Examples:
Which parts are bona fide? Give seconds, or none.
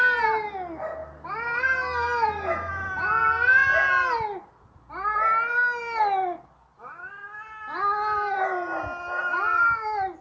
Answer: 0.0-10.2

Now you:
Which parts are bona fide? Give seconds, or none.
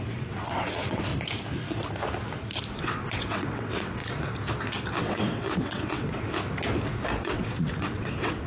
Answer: 1.1-2.8; 4.0-5.0; 6.3-7.2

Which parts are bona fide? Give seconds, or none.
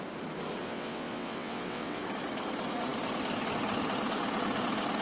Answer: 0.0-0.6; 2.0-5.0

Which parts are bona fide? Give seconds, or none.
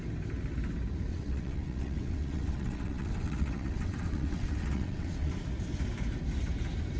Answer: 0.0-1.1; 5.3-7.0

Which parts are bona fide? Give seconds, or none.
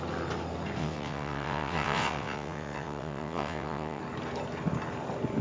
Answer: 0.0-0.8; 4.0-5.4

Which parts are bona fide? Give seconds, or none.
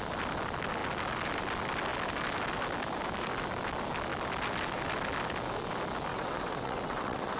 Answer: 0.0-6.1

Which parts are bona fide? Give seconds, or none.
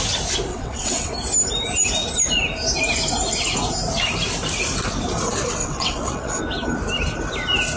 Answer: 0.0-0.5; 1.1-5.6; 6.4-7.8